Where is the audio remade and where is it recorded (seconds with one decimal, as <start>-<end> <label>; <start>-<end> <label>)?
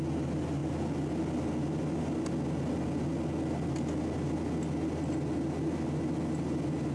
0.0-6.9 recorded